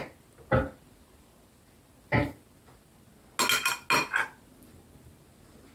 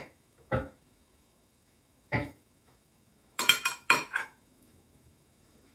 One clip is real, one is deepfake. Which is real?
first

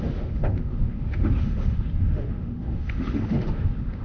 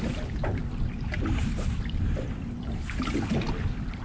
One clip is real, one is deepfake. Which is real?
second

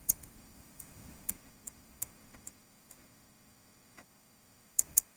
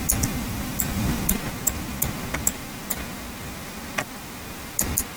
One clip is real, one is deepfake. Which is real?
second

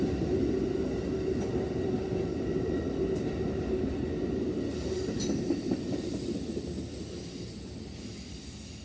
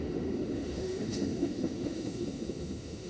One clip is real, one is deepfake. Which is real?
first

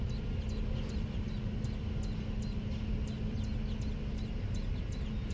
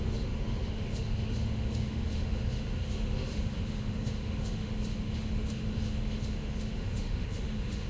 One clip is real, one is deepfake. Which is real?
first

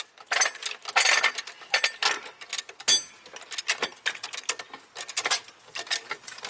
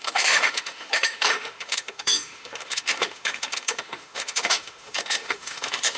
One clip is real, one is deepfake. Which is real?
first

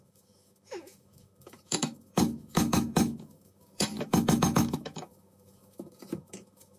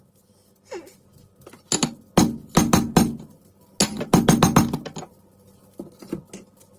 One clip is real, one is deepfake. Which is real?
second